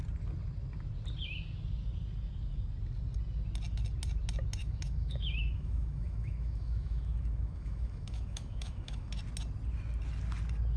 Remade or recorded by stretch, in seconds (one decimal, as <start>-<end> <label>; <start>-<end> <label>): 0.0-4.6 recorded; 4.6-9.1 remade; 9.1-10.8 recorded